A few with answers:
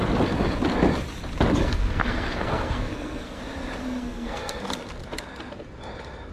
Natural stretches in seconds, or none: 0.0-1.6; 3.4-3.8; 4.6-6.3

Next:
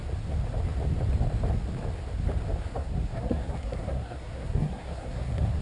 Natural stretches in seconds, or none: 0.0-2.7

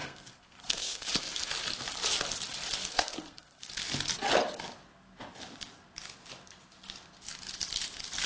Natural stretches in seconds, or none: 1.5-2.9; 3.7-8.3

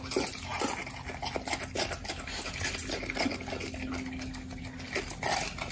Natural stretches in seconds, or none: 0.0-5.7

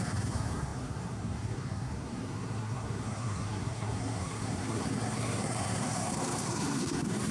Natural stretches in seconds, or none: none

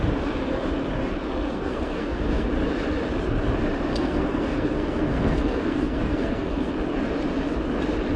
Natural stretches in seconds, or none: 0.0-1.5; 2.5-3.9; 6.7-8.2

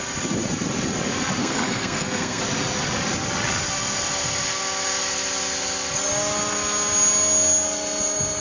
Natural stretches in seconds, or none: 0.0-1.4; 2.4-8.4

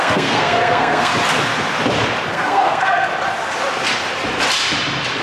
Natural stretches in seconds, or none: 1.1-2.3; 3.1-5.2